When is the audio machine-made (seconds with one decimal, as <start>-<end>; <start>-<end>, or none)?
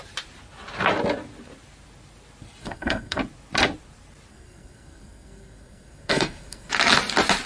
2.6-3.2; 4.3-6.7